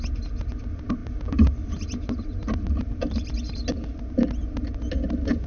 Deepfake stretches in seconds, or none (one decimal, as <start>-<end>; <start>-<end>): none